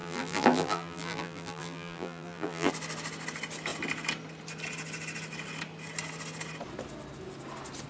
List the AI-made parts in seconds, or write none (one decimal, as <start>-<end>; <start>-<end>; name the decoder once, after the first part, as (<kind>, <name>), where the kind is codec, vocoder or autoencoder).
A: 0.0-2.7 (vocoder, BigVGAN v2)